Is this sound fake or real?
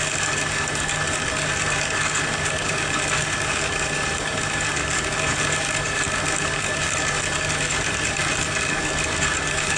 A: fake